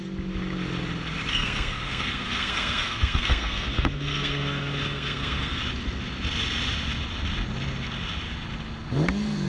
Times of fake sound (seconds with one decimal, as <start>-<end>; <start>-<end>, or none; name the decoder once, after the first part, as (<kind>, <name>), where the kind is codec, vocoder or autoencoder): 1.3-5.6 (codec, SNAC)